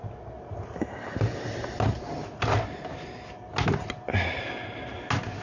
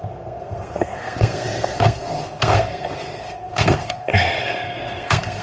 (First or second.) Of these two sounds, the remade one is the second